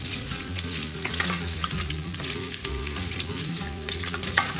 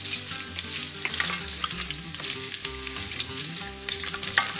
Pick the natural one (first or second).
second